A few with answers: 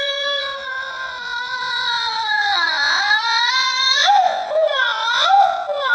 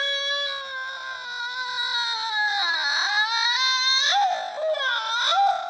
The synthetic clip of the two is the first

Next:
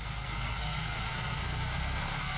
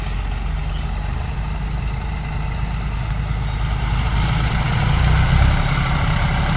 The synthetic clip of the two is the first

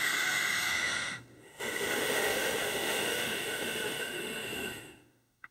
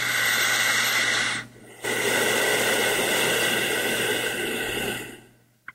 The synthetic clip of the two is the first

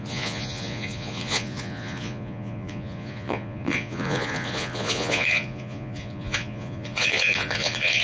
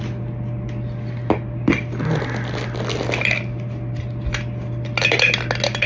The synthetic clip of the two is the first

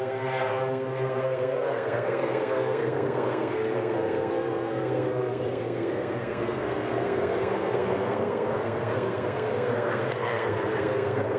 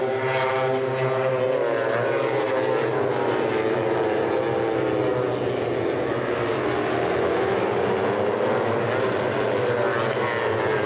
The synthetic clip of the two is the first